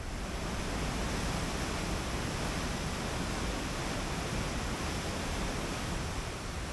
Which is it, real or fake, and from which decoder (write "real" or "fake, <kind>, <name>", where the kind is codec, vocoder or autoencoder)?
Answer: real